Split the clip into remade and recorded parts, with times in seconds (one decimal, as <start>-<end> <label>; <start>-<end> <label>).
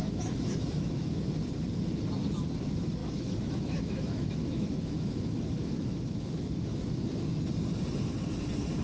0.0-1.3 remade; 1.3-3.0 recorded; 3.0-7.1 remade; 7.1-8.8 recorded